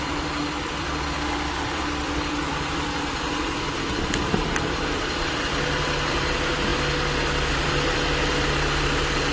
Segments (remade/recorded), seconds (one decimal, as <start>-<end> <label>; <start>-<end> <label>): 0.0-6.7 remade; 6.7-7.5 recorded; 7.5-9.3 remade